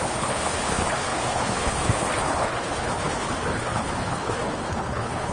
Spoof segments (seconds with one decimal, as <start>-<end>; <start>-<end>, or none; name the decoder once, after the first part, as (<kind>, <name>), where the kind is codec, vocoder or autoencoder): 0.0-5.3 (codec, HILCodec)